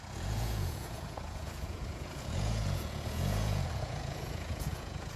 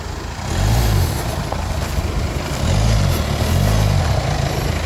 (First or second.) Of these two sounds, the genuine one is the second